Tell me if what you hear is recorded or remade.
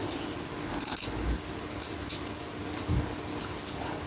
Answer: recorded